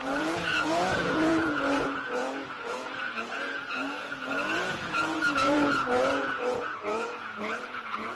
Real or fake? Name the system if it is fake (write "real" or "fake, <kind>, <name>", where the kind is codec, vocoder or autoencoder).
fake, vocoder, Vocos